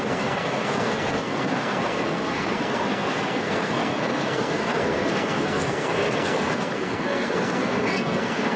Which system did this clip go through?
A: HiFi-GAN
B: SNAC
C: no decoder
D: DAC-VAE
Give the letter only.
B